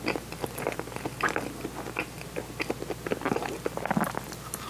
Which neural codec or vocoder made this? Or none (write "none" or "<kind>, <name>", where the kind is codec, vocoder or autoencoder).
none